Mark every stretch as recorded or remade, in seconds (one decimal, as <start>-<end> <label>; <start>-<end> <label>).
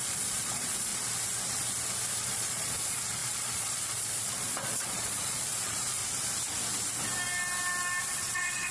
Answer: 0.0-0.9 remade; 0.9-2.2 recorded; 2.2-6.0 remade; 6.0-8.0 recorded; 8.0-8.7 remade